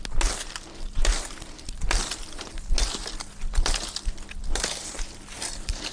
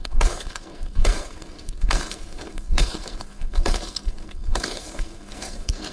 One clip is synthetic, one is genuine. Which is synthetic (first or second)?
second